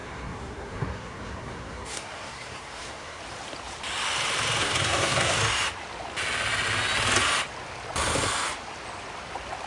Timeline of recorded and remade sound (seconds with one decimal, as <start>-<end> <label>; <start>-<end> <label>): 0.0-3.2 remade; 3.2-4.6 recorded; 4.6-5.4 remade; 5.4-9.7 recorded